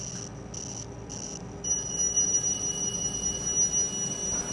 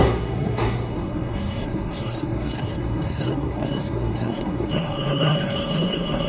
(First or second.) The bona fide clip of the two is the first